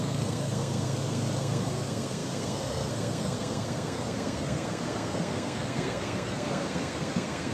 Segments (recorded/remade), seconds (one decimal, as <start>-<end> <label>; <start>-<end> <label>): 0.0-7.5 remade